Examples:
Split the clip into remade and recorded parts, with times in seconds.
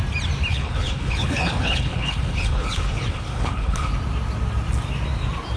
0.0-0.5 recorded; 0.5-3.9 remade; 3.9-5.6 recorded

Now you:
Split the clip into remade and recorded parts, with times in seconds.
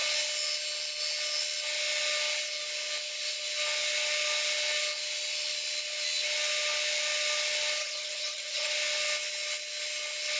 0.0-7.8 recorded; 7.8-8.7 remade; 8.7-10.4 recorded